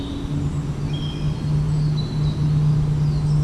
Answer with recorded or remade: recorded